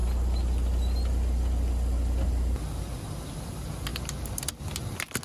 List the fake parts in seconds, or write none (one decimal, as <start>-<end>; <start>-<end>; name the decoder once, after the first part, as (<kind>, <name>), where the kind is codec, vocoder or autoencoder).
none

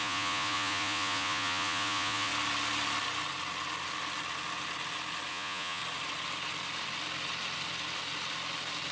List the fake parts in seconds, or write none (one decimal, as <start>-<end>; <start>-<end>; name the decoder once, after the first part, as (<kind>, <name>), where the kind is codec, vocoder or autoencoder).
0.0-2.3 (vocoder, Vocos); 5.3-5.8

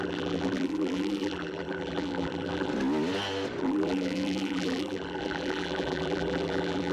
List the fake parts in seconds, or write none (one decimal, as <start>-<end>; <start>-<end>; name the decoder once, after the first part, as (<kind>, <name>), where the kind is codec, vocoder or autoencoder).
0.0-2.7 (vocoder, BigVGAN v2); 3.6-6.9

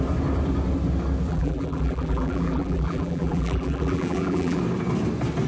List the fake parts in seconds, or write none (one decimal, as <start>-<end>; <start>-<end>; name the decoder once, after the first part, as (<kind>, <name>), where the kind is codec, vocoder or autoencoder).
1.3-4.6 (vocoder, BigVGAN v2)

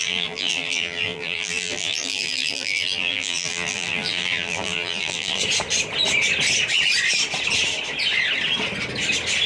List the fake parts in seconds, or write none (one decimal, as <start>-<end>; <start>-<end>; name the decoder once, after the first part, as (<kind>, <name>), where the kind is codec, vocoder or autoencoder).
0.0-5.4 (vocoder, BigVGAN v2)

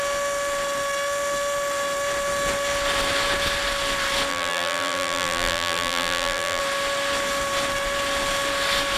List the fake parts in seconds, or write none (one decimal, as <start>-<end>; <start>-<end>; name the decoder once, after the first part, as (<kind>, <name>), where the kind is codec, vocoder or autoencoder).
4.3-6.6 (vocoder, BigVGAN v2)

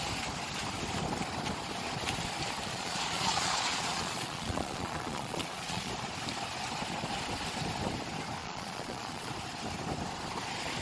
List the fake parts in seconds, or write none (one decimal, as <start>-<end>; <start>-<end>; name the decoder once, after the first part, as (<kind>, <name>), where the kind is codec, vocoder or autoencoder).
2.7-5.9 (vocoder, Vocos); 8.4-9.3

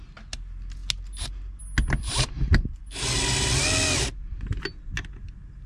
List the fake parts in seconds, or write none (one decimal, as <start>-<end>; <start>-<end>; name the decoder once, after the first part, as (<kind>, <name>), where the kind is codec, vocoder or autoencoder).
none